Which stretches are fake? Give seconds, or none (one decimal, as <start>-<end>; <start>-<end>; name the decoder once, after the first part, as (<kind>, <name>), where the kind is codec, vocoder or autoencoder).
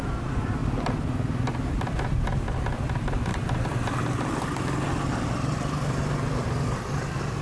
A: none